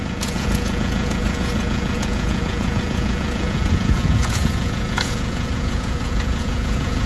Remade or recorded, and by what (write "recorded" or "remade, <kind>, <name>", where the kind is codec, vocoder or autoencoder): remade, vocoder, Vocos